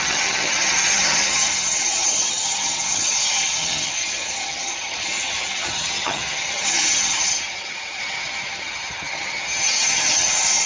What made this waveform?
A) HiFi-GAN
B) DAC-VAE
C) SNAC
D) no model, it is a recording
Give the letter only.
A